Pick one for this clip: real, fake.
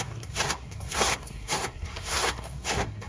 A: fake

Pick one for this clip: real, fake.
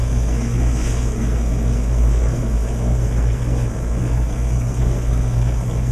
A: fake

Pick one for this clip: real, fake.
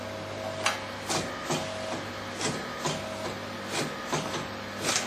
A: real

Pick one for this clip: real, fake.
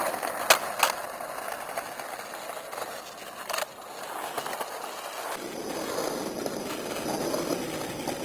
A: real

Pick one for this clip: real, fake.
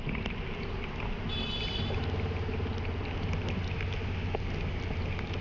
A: real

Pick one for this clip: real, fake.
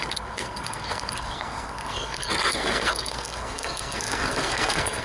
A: fake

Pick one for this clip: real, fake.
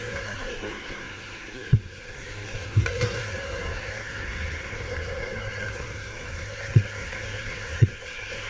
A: fake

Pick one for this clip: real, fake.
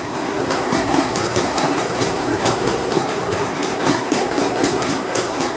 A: fake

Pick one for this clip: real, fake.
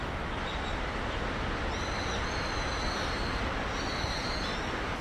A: real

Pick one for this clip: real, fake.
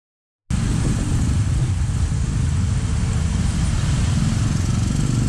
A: real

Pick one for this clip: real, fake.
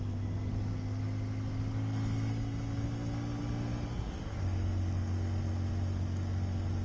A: real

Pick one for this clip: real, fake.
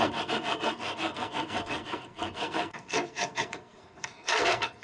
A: fake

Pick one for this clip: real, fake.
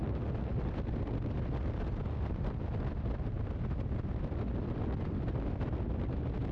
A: real